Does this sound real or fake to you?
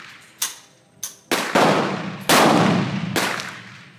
real